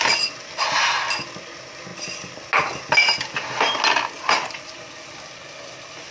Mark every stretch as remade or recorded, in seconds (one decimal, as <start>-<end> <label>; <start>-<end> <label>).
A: 0.0-4.2 recorded; 4.2-5.1 remade; 5.1-6.1 recorded